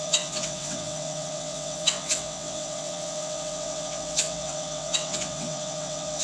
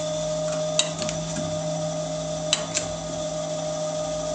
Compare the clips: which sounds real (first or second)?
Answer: second